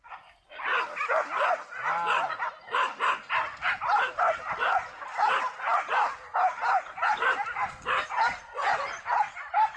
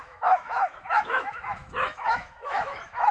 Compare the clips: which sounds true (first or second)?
first